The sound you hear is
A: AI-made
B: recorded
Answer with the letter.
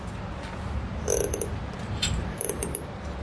B